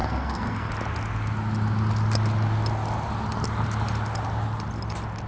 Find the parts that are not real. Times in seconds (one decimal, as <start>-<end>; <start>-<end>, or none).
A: 0.0-0.7